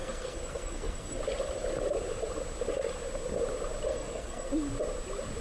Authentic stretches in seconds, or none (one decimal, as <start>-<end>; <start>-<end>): 1.2-3.9; 4.5-5.4